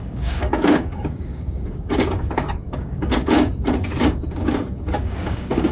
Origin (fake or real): fake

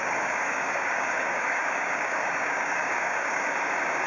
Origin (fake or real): fake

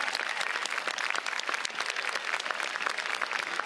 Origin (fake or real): real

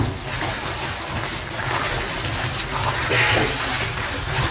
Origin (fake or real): real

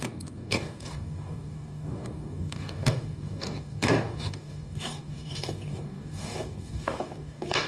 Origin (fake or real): fake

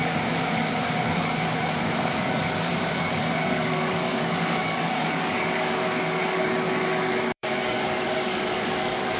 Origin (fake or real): fake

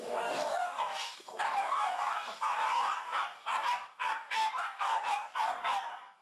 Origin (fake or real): fake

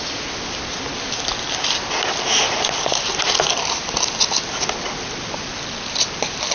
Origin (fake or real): real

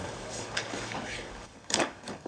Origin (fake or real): fake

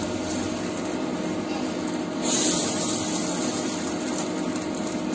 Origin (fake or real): real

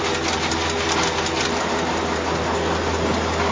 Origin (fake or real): real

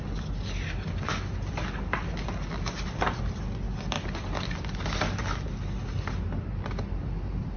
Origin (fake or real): real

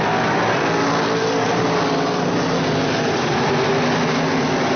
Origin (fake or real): real